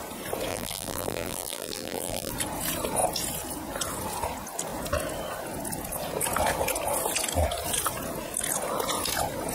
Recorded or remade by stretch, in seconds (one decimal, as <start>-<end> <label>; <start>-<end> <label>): 0.0-0.5 recorded; 0.5-2.3 remade; 2.3-9.5 recorded